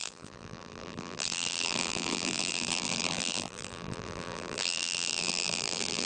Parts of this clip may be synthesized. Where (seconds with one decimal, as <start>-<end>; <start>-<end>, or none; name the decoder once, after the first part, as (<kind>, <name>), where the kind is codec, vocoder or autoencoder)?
0.0-6.0 (vocoder, BigVGAN v2)